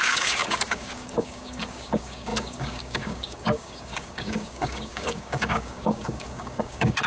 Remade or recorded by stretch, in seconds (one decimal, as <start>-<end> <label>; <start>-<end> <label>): 0.0-7.1 remade